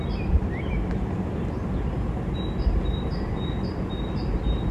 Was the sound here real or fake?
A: real